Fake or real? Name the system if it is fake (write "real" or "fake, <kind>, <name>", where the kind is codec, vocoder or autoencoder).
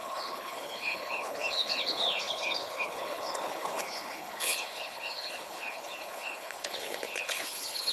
fake, codec, HILCodec